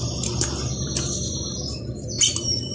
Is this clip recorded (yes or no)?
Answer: yes